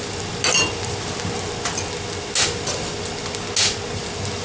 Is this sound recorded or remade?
recorded